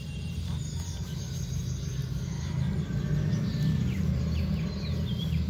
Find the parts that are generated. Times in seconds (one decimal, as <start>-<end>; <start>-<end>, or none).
none